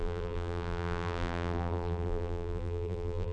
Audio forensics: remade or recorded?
remade